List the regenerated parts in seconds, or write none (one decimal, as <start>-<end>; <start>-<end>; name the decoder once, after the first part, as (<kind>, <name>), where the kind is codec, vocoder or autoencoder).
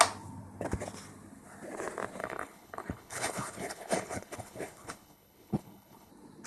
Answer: 2.2-6.1 (codec, HILCodec)